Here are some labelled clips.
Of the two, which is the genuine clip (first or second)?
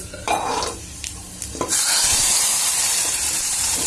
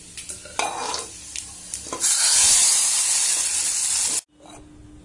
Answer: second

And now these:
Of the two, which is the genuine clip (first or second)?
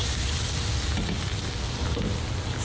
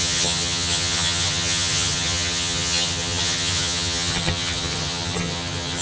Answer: first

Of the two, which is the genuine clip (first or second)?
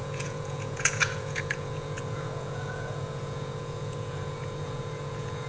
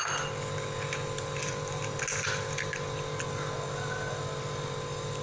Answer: second